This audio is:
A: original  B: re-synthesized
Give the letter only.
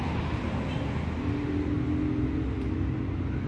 A